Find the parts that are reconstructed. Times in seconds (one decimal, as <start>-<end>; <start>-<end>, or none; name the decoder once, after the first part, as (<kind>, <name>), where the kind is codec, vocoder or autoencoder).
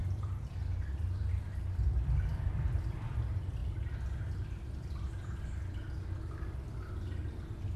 0.0-1.4 (vocoder, BigVGAN v2); 2.3-3.1; 3.6-5.1